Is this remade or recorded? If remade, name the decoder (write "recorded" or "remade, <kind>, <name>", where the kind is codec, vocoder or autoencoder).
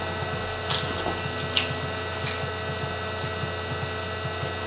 recorded